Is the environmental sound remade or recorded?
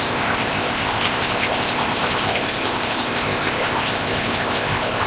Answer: remade